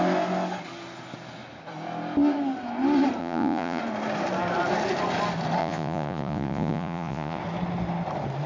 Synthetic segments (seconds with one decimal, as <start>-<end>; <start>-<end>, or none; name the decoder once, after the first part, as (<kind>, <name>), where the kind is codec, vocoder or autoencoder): 3.2-3.8 (vocoder, Vocos); 5.6-7.4